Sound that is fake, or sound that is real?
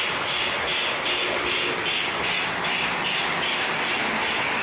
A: real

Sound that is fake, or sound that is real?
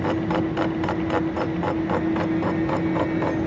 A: real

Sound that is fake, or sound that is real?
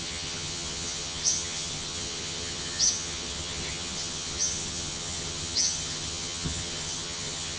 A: fake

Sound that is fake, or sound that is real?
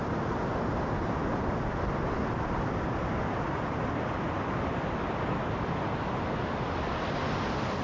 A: real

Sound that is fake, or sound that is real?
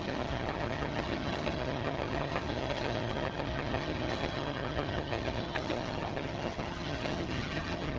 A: fake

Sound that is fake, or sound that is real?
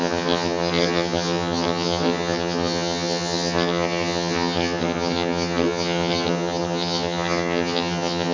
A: fake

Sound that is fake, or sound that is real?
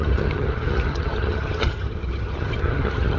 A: fake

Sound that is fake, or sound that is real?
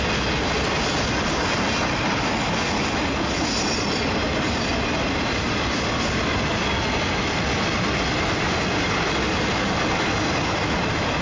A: real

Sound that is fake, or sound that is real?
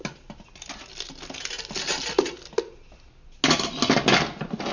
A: real